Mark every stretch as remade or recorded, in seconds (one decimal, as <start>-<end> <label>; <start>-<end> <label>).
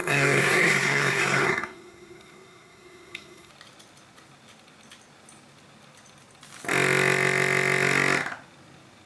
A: 0.0-3.5 remade; 3.5-9.1 recorded